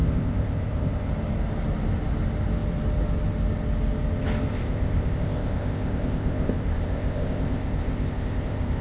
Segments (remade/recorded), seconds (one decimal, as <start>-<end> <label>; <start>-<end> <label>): 0.0-1.1 remade; 1.1-4.5 recorded; 4.5-8.8 remade